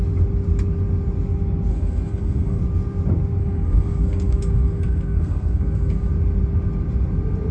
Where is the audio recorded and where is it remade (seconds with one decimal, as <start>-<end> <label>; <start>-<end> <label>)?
0.0-1.7 recorded; 1.7-2.6 remade; 2.6-3.4 recorded; 3.4-6.1 remade; 6.1-7.5 recorded